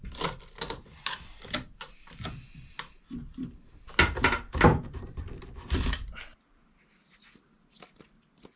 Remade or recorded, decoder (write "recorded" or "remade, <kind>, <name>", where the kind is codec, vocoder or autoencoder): recorded